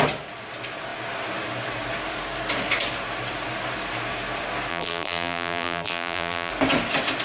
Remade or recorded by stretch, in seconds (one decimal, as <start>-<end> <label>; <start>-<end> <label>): 0.0-4.7 recorded; 4.7-6.5 remade; 6.5-7.2 recorded